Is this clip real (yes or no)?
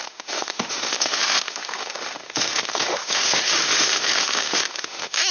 no